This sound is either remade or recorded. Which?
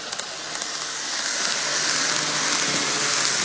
recorded